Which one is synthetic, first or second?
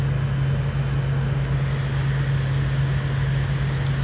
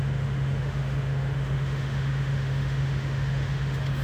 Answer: second